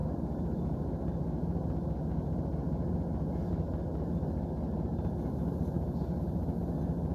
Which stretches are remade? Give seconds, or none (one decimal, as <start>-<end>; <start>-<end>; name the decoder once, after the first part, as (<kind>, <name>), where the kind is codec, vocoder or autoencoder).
none